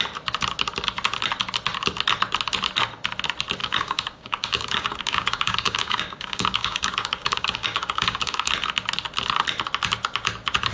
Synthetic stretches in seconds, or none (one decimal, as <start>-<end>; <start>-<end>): 3.6-8.5